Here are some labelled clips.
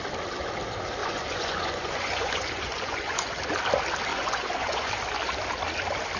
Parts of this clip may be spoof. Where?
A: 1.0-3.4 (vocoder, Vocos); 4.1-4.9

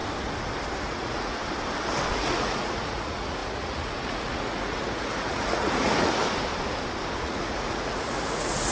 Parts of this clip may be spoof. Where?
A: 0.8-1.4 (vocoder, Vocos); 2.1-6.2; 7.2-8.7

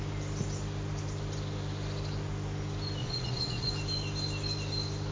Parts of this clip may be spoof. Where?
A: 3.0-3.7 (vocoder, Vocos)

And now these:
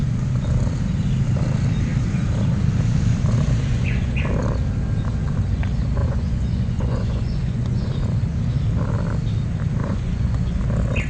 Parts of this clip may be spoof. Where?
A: 3.7-4.2 (vocoder, Vocos); 6.0-7.9; 9.8-10.6

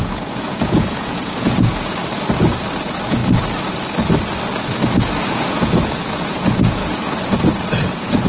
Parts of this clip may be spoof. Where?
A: 0.0-2.0 (vocoder, Vocos); 2.8-3.2; 5.0-8.3

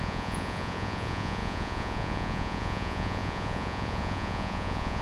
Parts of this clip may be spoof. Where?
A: 0.0-5.0 (vocoder, Vocos)

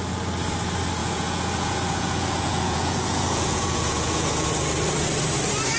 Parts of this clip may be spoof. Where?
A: 1.0-4.5 (vocoder, Vocos)